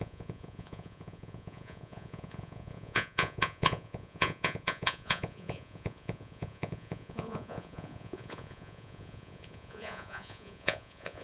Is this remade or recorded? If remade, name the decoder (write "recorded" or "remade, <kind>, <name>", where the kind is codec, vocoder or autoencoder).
remade, vocoder, Vocos